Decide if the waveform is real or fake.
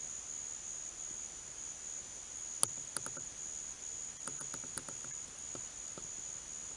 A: real